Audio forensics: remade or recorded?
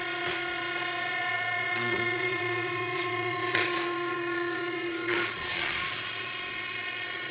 remade